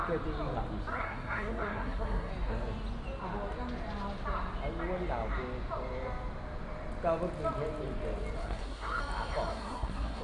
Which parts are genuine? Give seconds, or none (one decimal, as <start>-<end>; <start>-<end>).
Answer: 0.0-0.9; 2.3-8.4; 9.0-9.5